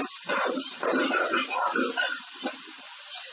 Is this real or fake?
real